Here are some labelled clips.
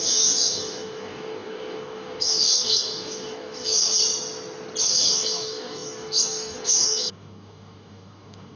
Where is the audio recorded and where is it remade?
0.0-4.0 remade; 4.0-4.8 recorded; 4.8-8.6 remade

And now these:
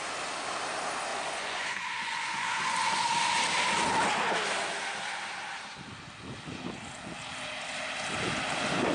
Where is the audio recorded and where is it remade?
0.0-1.1 recorded; 1.1-3.0 remade; 3.0-8.9 recorded

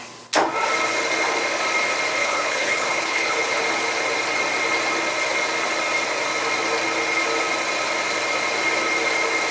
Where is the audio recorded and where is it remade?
0.0-2.2 recorded; 2.2-3.6 remade; 3.6-9.5 recorded

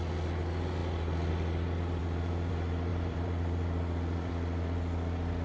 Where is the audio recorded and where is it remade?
0.0-2.0 recorded; 2.0-2.5 remade; 2.5-2.9 recorded; 2.9-4.3 remade; 4.3-5.4 recorded

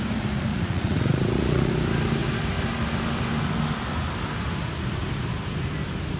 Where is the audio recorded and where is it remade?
0.0-0.5 recorded; 0.5-1.7 remade; 1.7-6.2 recorded

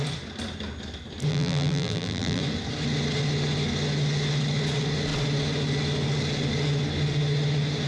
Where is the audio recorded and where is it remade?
0.0-1.3 recorded; 1.3-2.4 remade; 2.4-7.9 recorded